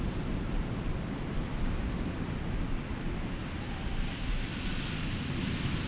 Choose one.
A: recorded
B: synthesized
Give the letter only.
A